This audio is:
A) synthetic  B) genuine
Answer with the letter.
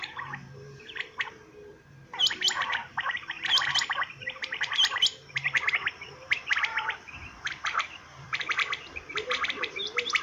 A